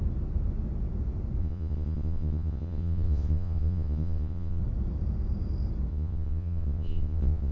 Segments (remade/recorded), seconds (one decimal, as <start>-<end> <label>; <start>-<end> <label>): 0.0-1.4 recorded; 1.4-4.6 remade; 4.6-5.9 recorded; 5.9-7.5 remade